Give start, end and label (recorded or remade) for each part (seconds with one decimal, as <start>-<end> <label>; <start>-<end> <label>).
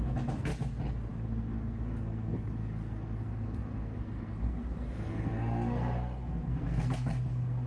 0.0-0.5 remade; 0.5-1.1 recorded; 1.1-7.7 remade